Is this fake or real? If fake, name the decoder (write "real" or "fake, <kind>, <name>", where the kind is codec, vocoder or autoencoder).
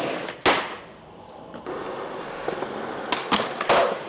real